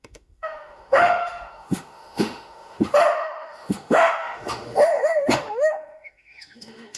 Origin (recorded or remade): remade